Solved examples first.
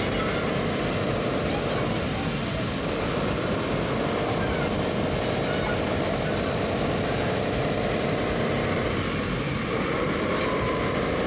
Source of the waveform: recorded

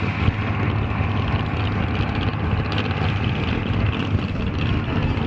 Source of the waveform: recorded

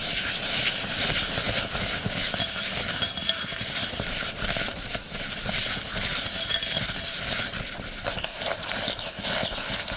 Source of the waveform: remade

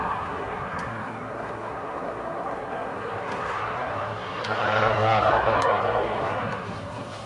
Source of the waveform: remade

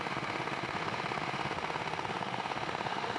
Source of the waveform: remade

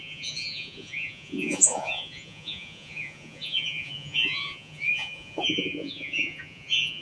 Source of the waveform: remade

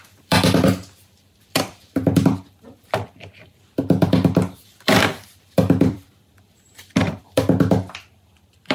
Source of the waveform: remade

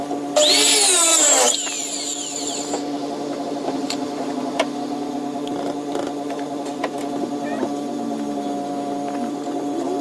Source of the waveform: recorded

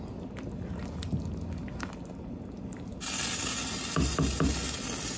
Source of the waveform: recorded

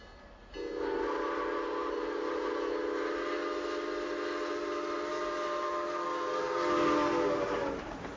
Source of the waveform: recorded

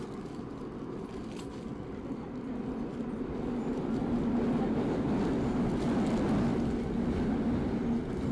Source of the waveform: recorded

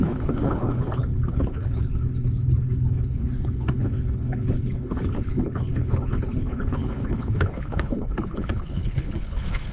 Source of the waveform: remade